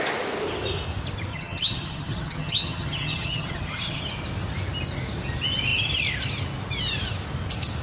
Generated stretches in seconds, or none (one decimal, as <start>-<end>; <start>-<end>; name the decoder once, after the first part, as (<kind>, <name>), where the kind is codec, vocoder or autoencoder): 1.3-4.0 (vocoder, HiFi-GAN)